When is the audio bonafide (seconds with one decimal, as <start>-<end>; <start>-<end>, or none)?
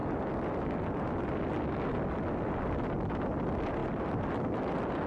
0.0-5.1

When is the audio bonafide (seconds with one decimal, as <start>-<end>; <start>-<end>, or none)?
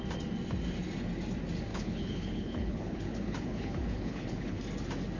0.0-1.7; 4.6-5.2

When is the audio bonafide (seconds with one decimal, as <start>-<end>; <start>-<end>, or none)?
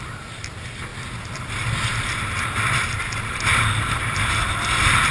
0.0-5.1